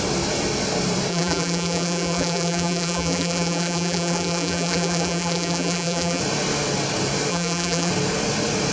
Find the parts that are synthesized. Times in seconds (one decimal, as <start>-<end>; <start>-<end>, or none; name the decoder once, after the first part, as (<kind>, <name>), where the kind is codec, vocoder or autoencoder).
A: 1.1-6.2 (vocoder, BigVGAN v2); 7.3-7.9